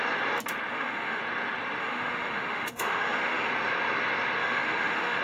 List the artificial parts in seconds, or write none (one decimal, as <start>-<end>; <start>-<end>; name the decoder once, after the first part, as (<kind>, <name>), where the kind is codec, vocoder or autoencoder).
0.7-1.2 (autoencoder, DAC-VAE); 1.8-3.5; 4.4-5.2